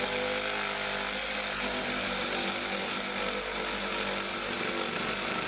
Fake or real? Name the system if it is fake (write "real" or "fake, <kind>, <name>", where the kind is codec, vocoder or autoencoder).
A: real